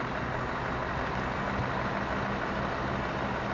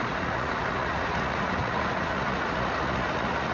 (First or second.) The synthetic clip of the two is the second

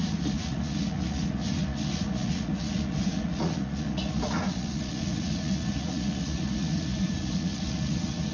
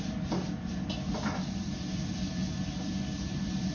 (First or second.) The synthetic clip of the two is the first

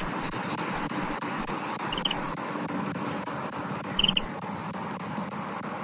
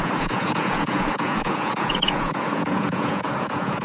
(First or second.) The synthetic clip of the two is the second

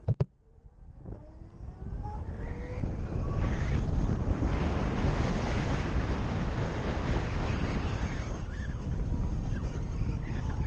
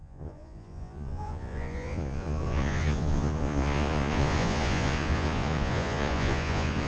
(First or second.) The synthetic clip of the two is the second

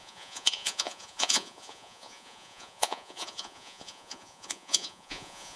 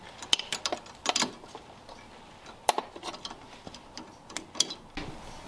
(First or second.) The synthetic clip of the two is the first